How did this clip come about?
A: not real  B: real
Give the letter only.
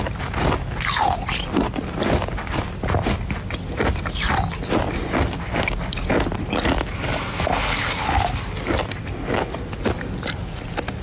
B